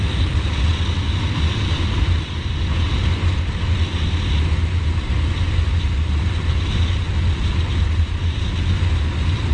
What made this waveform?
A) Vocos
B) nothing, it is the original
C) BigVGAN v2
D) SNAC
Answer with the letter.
B